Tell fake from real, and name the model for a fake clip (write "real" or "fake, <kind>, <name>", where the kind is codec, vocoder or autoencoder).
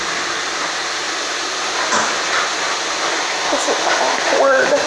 real